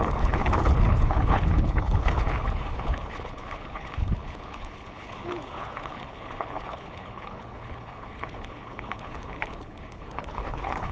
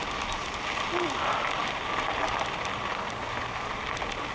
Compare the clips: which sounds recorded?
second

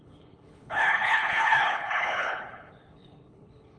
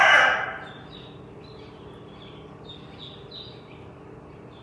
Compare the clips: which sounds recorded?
second